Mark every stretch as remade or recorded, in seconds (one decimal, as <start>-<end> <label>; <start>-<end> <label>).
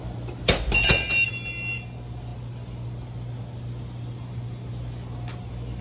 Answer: 0.0-5.8 recorded